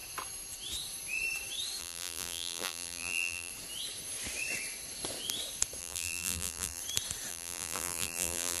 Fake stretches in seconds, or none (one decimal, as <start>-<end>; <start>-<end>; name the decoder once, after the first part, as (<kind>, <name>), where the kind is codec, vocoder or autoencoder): 1.8-3.5 (vocoder, BigVGAN v2); 5.8-6.8; 7.3-8.6